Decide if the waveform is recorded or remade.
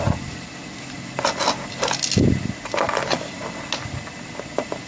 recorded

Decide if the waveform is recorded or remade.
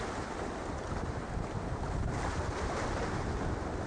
recorded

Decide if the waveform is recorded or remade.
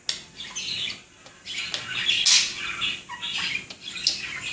recorded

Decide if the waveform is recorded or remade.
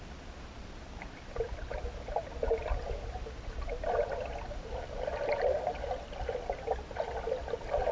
recorded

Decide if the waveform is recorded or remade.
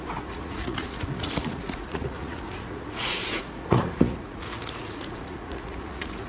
remade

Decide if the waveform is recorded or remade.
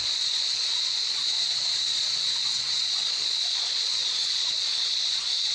remade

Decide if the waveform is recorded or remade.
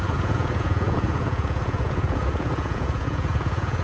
remade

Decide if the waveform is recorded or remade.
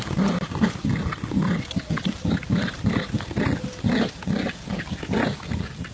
recorded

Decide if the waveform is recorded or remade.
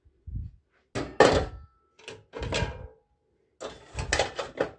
recorded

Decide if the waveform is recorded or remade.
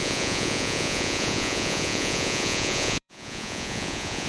remade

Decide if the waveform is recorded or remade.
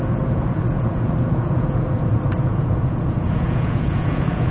remade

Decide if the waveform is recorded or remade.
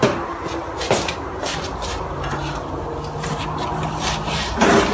recorded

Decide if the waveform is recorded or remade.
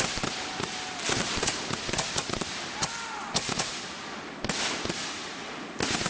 recorded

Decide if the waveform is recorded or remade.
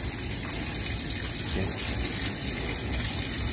recorded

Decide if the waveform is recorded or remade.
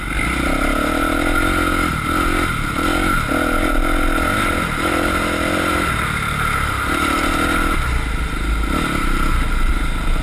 recorded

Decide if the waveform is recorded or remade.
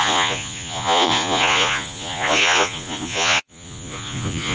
remade